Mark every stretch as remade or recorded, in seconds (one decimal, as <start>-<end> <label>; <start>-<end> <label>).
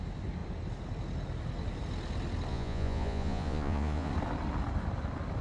0.0-2.5 recorded; 2.5-4.1 remade; 4.1-5.4 recorded